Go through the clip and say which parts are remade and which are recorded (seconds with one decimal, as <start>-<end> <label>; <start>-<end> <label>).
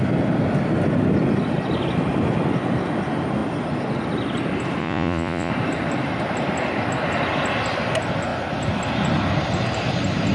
0.0-4.8 recorded; 4.8-5.5 remade; 5.5-10.3 recorded